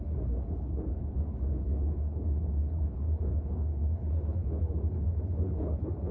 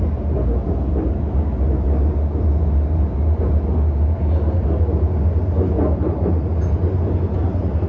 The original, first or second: second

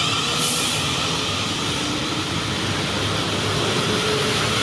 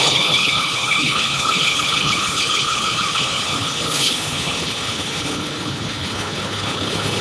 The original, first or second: first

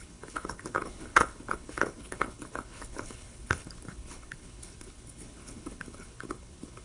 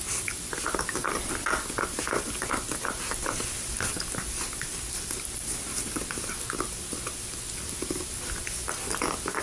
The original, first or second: second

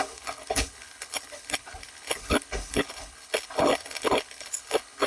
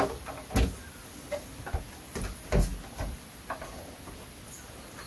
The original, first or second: second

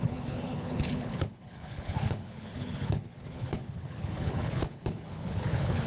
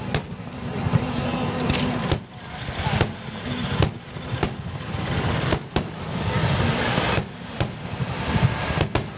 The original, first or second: second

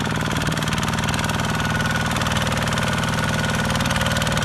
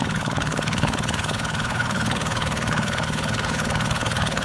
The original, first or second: first